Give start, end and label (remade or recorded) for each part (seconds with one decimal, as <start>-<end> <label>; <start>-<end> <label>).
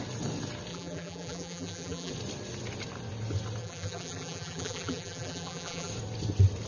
0.0-0.7 recorded; 0.7-2.1 remade; 2.1-3.6 recorded; 3.6-5.9 remade; 5.9-6.7 recorded